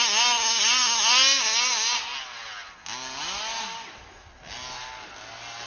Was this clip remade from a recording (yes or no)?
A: no